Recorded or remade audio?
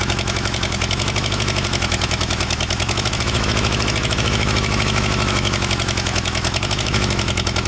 remade